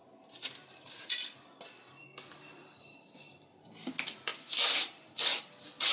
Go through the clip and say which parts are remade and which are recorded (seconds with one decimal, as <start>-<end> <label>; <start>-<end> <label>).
0.0-0.9 recorded; 0.9-2.0 remade; 2.0-2.6 recorded; 2.6-5.9 remade